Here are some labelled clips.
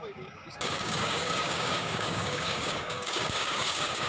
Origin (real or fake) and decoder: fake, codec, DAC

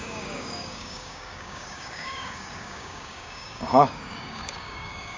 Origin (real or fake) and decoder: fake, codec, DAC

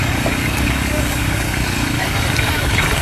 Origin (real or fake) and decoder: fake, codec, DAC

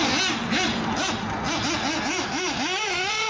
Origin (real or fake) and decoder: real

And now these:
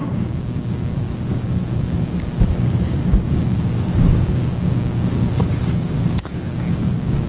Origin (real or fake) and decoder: fake, codec, DAC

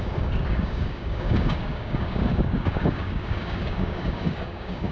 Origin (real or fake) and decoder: fake, codec, DAC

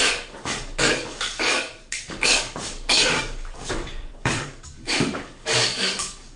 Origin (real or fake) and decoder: fake, codec, DAC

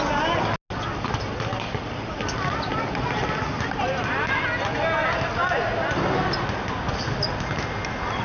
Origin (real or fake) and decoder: real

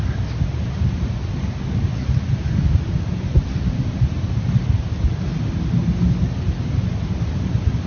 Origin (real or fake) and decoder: real